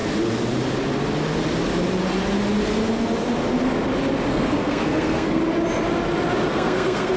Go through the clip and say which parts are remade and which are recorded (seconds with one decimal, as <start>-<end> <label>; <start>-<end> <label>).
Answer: 0.0-4.3 recorded; 4.3-5.4 remade; 5.4-6.5 recorded; 6.5-7.2 remade